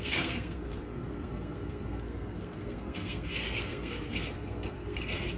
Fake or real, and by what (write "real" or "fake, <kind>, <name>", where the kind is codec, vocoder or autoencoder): fake, codec, SNAC